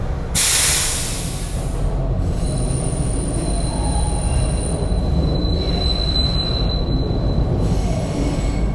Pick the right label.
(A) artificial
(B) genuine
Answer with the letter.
B